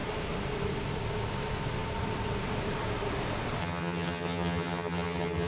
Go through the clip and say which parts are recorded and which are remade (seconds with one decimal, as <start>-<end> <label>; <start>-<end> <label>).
0.0-3.6 recorded; 3.6-5.5 remade